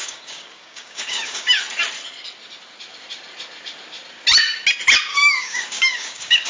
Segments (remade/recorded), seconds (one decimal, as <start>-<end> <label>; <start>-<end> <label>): 0.0-1.6 remade; 1.6-5.1 recorded; 5.1-6.5 remade